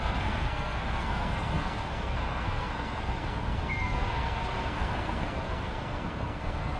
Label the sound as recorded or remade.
remade